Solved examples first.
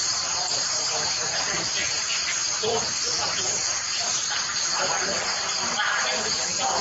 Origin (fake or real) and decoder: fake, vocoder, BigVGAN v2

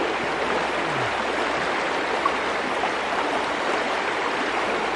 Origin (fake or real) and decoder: fake, vocoder, BigVGAN v2